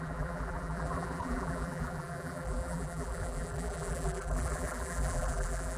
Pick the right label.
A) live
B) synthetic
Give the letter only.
B